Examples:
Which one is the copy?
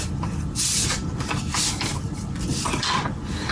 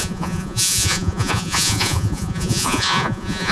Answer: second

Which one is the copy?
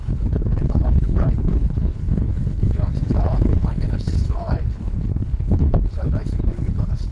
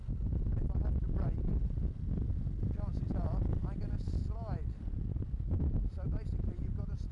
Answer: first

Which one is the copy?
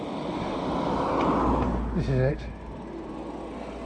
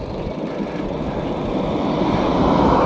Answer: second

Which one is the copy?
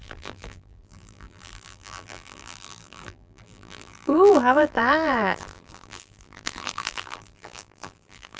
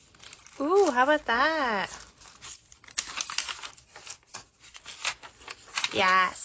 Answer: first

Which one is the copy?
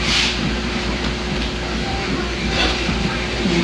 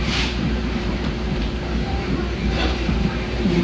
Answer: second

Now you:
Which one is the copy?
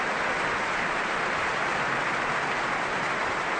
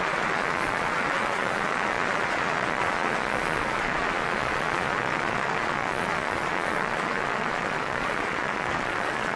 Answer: second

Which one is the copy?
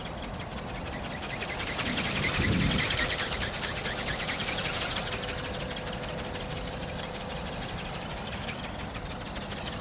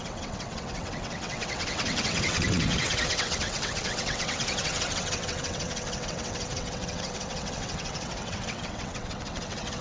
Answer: second